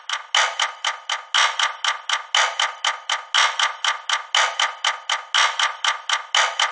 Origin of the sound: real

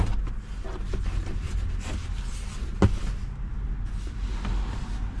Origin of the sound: real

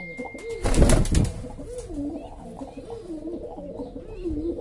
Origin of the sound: real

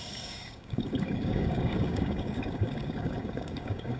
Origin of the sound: fake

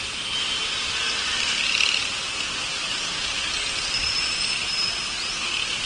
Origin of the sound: real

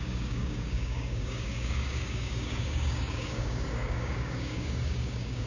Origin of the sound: fake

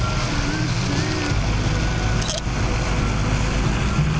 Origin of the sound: real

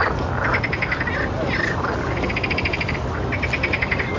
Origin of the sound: fake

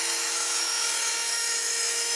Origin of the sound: fake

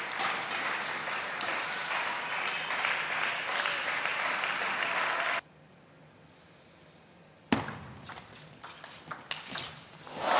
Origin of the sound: real